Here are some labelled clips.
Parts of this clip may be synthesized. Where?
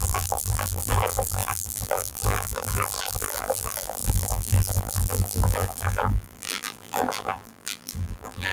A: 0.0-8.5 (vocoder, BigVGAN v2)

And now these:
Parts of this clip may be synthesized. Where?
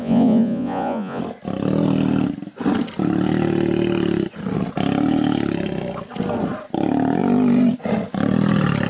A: 0.0-1.2 (vocoder, Vocos)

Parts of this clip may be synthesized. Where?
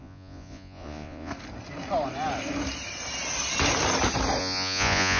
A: 0.0-1.3 (vocoder, Vocos); 4.4-5.2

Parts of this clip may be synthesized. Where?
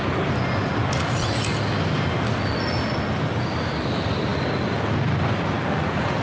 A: none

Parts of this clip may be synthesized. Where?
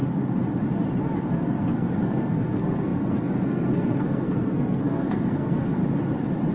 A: 1.2-5.8 (codec, SNAC)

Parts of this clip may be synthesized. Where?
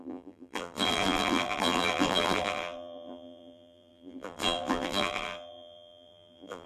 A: 0.0-6.7 (vocoder, BigVGAN v2)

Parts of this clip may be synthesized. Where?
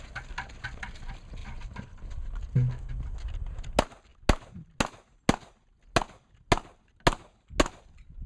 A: none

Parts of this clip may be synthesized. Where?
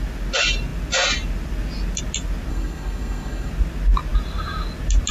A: 2.5-3.5 (codec, SNAC)